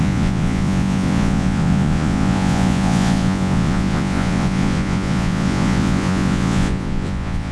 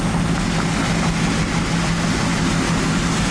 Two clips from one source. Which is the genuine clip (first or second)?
second